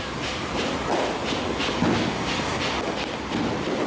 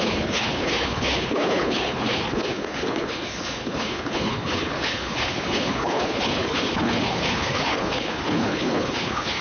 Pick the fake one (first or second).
second